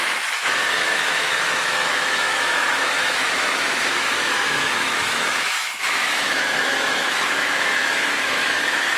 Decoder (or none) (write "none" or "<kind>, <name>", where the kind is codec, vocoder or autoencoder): autoencoder, DAC-VAE